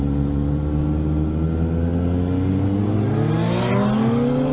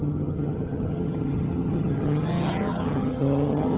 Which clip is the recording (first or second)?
first